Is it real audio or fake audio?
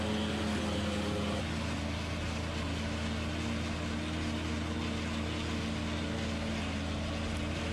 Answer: real